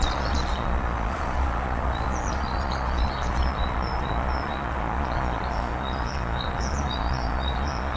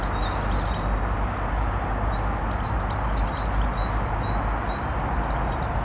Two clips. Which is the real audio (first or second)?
second